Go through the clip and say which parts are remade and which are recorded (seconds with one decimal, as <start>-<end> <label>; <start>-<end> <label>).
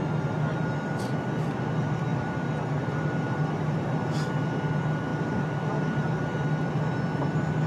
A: 0.0-2.1 recorded; 2.1-3.1 remade; 3.1-5.1 recorded; 5.1-6.1 remade; 6.1-7.7 recorded